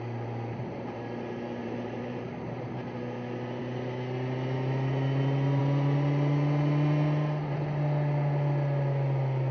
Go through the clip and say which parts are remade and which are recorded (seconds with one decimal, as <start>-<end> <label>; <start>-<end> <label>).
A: 0.0-1.6 recorded; 1.6-2.7 remade; 2.7-9.5 recorded